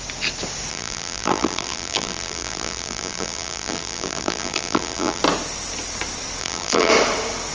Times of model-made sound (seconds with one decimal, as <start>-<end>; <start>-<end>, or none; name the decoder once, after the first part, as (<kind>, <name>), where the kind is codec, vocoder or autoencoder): 0.7-5.2 (vocoder, BigVGAN v2); 6.4-6.9